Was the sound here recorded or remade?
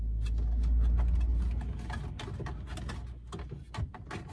recorded